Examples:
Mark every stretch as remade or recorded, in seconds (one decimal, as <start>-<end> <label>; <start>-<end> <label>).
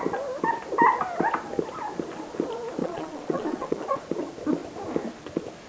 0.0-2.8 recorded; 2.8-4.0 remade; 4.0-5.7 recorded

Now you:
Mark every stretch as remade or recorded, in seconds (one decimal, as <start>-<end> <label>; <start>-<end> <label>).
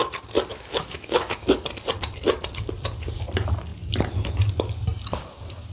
0.0-0.5 recorded; 0.5-1.4 remade; 1.4-5.7 recorded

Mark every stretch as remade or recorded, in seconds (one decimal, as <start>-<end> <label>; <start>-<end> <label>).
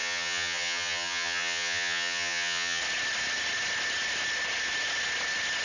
0.0-2.8 remade; 2.8-5.6 recorded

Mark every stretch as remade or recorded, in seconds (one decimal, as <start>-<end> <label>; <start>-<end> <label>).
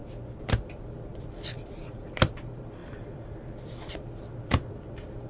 0.0-0.6 recorded; 0.6-5.3 remade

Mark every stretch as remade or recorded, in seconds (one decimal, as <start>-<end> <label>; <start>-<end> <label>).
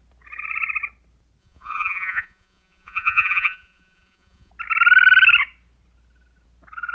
0.0-1.4 recorded; 1.4-4.5 remade; 4.5-6.9 recorded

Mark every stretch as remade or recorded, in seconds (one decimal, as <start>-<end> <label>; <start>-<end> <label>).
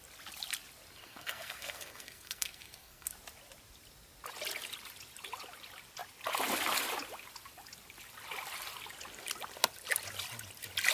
0.0-1.0 recorded; 1.0-3.1 remade; 3.1-10.9 recorded